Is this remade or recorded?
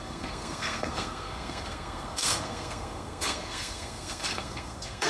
remade